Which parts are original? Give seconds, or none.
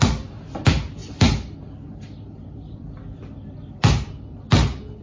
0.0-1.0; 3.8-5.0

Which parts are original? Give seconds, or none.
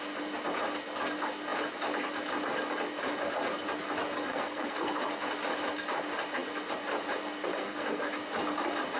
0.0-4.3; 5.0-7.5; 8.1-9.0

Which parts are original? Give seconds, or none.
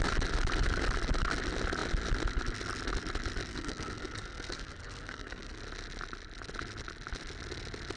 0.0-3.5; 5.6-8.0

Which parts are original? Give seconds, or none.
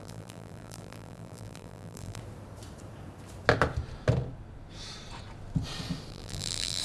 2.2-6.1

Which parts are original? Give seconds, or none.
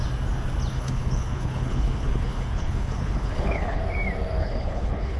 0.0-0.7; 3.8-4.4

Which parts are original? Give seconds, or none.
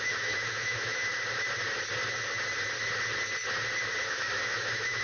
1.1-4.1